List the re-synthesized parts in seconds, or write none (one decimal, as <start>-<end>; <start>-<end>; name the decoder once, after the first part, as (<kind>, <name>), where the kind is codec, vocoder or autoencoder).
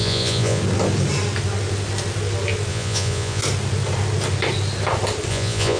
0.0-0.6 (vocoder, Vocos); 2.7-3.4; 5.3-5.8